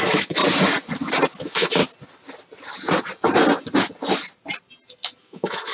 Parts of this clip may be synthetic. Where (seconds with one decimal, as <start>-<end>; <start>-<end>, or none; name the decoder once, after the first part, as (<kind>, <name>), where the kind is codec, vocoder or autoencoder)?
0.0-0.4 (autoencoder, DAC-VAE); 1.4-1.8; 5.2-5.7